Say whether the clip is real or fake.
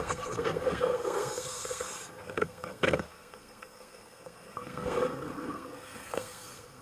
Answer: fake